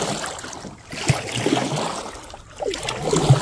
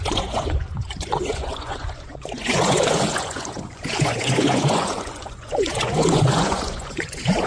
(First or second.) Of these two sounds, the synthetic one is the second